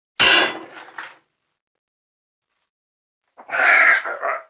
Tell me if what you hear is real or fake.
real